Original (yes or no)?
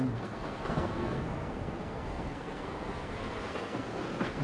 no